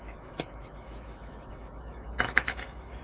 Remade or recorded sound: remade